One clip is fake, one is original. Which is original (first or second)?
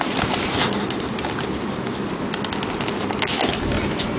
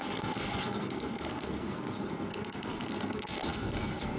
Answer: first